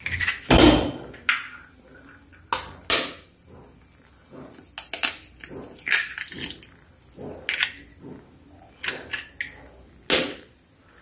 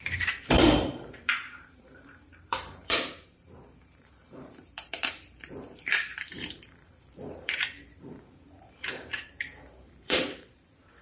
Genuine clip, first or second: first